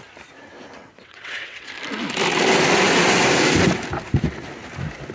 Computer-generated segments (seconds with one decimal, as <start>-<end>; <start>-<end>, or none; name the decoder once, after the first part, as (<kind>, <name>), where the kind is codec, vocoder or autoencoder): 0.8-1.7 (vocoder, WaveNeXt)